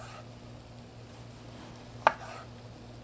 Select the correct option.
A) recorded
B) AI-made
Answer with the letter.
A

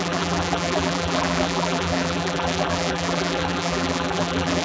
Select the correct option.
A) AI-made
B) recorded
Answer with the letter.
A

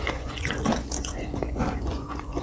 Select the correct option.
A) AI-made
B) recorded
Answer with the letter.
A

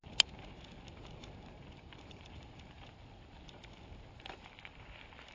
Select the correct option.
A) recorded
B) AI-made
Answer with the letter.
A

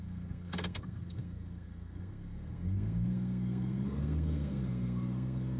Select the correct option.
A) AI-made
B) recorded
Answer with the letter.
A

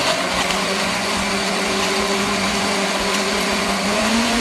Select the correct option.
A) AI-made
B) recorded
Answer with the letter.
A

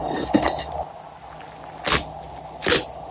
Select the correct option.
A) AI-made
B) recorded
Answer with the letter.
B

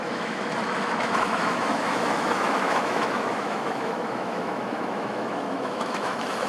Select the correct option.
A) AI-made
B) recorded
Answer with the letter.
A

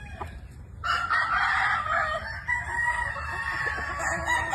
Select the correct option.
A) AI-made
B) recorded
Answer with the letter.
B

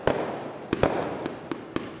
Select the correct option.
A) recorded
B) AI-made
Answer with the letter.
A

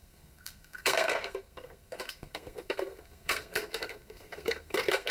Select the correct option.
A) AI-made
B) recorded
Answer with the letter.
A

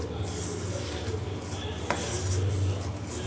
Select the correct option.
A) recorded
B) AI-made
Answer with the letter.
A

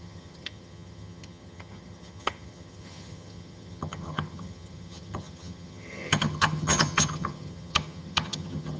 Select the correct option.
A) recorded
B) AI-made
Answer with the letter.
B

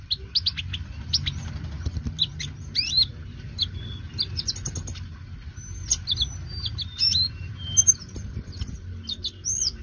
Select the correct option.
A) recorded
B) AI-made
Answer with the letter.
A